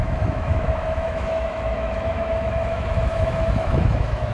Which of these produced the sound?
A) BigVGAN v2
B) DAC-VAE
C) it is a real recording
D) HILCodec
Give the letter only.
B